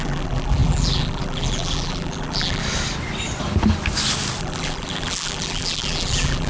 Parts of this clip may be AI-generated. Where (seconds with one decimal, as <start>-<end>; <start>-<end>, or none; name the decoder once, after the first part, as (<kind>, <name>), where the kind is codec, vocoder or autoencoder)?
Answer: 0.0-2.6 (vocoder, BigVGAN v2); 4.4-6.5